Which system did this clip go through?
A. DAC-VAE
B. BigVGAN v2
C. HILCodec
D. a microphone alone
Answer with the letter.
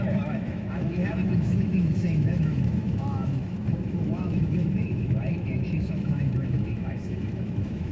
A